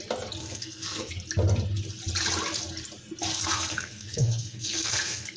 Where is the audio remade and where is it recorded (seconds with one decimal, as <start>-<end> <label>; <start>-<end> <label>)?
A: 0.0-0.4 recorded; 0.4-1.1 remade; 1.1-3.3 recorded; 3.3-5.4 remade